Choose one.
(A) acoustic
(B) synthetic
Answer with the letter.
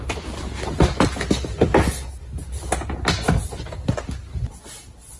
A